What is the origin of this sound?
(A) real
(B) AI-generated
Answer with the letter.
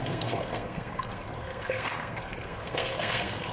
B